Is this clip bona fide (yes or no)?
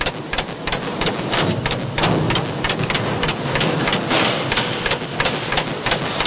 yes